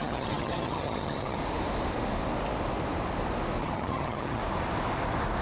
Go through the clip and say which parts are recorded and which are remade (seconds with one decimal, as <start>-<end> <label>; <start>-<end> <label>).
0.0-1.4 remade; 1.4-3.6 recorded; 3.6-4.4 remade; 4.4-5.4 recorded